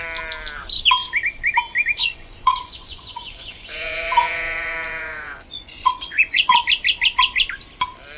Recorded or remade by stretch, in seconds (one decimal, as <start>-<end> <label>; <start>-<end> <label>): 0.0-2.0 recorded; 2.0-6.6 remade; 6.6-8.2 recorded